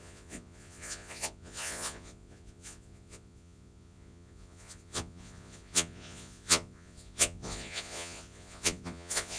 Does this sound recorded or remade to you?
remade